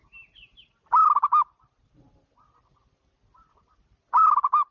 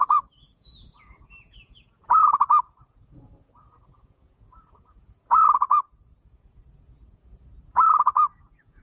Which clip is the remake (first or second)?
second